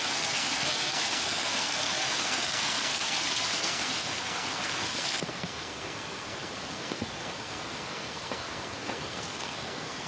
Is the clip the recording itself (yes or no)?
no